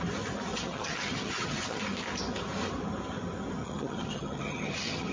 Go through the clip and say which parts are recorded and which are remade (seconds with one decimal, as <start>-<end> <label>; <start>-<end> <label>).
0.0-0.5 recorded; 0.5-1.8 remade; 1.8-3.6 recorded; 3.6-5.1 remade